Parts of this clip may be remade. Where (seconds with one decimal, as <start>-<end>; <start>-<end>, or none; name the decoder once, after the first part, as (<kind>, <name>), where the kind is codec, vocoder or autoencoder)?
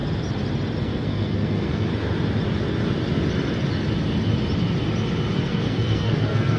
0.8-1.9 (codec, SNAC); 5.4-6.6